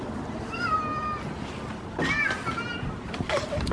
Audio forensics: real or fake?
real